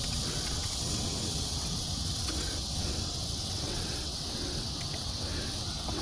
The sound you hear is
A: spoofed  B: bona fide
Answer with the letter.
A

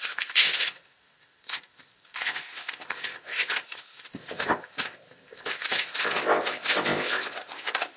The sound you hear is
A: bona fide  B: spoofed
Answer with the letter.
B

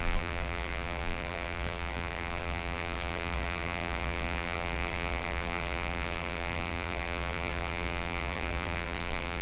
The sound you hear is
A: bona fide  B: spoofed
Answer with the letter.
B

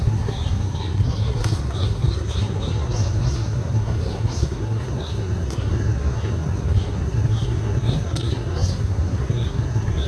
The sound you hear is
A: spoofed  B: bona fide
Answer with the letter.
A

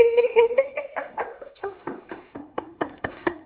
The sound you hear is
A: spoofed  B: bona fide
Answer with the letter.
A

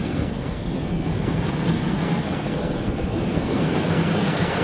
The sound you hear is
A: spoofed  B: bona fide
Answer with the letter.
A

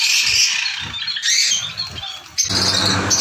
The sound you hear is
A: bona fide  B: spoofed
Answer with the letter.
A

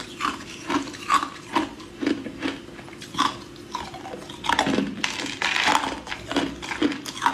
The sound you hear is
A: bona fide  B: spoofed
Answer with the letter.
A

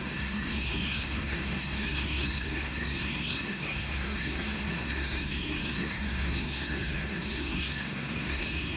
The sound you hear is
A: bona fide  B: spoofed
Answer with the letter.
B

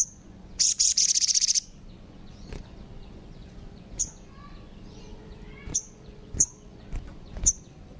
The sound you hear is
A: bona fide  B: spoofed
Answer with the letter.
B